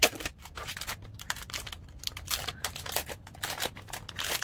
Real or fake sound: real